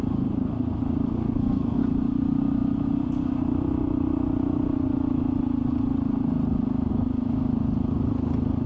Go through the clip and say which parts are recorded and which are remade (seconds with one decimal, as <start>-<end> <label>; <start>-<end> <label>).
0.0-1.2 recorded; 1.2-1.8 remade; 1.8-8.7 recorded